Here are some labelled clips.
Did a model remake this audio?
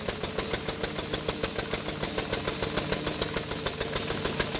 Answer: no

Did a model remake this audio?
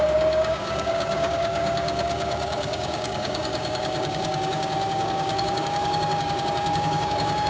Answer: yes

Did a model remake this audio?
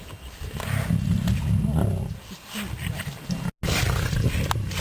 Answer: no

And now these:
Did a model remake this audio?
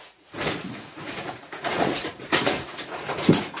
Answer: yes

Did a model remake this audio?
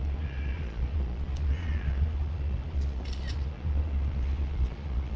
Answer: yes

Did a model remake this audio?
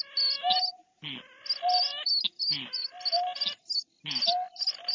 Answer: no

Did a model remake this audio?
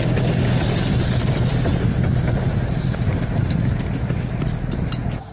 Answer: no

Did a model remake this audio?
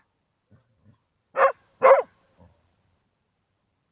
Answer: no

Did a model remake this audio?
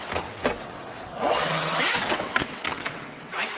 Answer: yes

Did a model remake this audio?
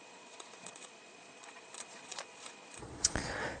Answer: yes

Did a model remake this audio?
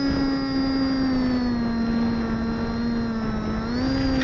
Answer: no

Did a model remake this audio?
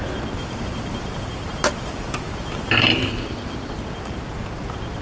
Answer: no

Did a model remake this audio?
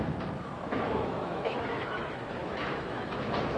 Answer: yes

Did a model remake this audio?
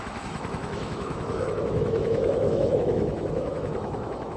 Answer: yes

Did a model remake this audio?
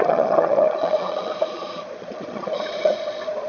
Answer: yes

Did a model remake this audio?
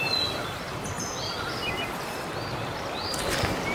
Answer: no